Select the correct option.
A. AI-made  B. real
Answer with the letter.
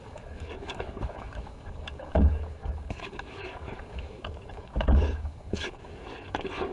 A